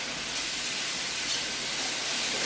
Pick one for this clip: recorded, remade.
recorded